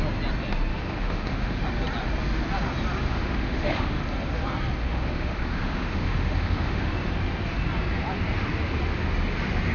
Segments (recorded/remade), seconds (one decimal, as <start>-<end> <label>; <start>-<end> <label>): 0.0-0.7 recorded; 0.7-1.6 remade; 1.6-3.0 recorded; 3.0-4.0 remade; 4.0-4.8 recorded; 4.8-6.9 remade; 6.9-9.7 recorded